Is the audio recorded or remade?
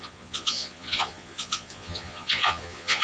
remade